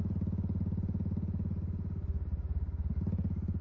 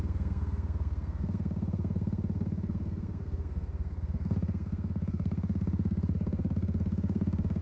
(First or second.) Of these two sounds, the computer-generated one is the second